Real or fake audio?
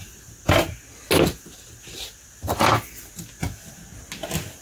real